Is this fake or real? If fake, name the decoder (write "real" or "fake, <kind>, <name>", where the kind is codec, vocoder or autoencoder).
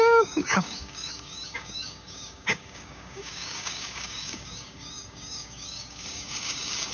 fake, codec, DAC